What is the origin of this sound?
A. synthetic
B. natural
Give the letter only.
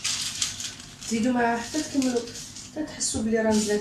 B